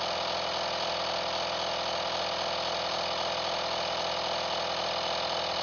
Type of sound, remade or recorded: recorded